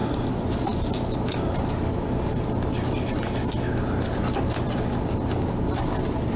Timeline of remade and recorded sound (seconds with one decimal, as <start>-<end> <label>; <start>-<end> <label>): 0.0-6.4 recorded